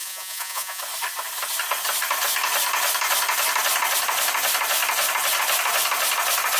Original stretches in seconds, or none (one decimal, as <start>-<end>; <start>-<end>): 0.8-6.6